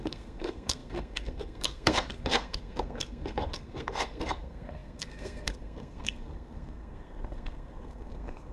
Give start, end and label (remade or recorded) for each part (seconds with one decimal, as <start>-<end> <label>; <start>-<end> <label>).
0.0-8.5 remade